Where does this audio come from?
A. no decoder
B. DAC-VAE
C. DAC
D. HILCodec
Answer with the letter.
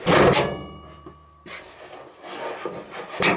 A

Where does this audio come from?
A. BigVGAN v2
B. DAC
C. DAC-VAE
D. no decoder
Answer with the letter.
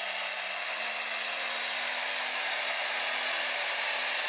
D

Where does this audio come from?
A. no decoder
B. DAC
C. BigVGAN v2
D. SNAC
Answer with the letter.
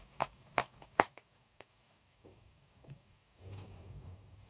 B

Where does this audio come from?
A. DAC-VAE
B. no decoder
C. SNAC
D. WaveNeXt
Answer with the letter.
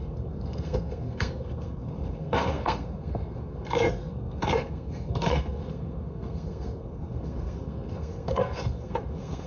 C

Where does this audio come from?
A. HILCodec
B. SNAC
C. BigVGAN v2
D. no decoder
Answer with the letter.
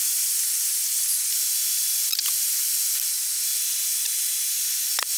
D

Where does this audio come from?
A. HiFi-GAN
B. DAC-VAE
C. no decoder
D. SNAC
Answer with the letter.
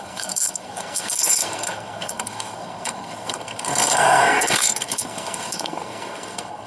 D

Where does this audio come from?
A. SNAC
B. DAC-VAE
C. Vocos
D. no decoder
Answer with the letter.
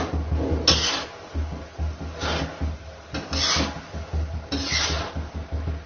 D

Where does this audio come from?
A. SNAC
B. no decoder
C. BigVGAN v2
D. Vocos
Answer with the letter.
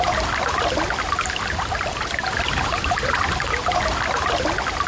B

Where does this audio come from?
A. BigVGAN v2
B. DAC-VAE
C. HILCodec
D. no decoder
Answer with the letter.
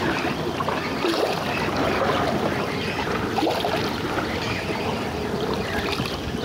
D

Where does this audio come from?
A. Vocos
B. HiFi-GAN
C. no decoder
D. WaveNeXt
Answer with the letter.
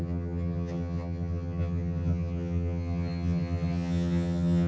B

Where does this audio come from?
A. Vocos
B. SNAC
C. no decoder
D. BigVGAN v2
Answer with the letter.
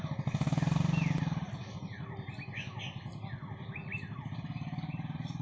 C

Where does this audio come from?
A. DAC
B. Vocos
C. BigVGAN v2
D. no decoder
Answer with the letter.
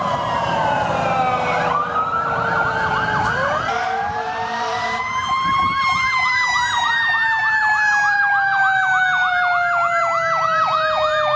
C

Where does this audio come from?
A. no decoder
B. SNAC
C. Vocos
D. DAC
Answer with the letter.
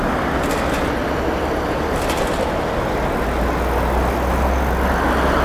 A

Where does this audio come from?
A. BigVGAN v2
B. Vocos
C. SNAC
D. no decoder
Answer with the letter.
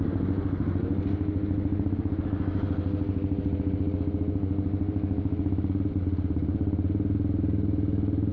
D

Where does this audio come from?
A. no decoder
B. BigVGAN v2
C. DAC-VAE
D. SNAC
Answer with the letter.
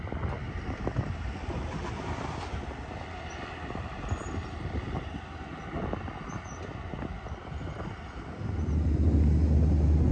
A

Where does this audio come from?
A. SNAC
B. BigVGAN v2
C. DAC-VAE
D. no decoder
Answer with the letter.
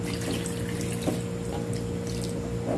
D